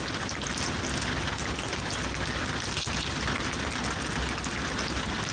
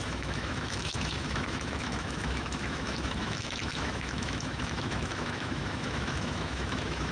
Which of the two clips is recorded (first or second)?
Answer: first